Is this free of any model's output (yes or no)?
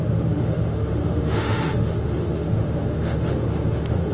no